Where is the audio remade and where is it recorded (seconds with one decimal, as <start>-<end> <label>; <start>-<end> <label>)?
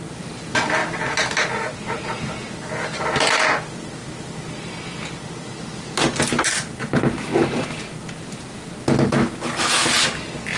0.0-10.6 recorded